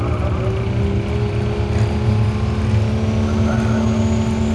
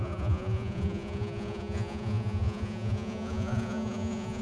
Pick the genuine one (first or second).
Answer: first